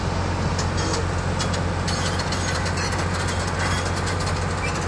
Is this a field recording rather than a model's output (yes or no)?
yes